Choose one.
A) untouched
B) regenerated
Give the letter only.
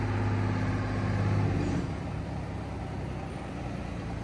A